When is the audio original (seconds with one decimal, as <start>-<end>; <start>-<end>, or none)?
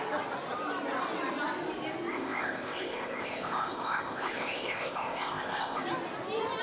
0.0-2.1; 5.8-6.6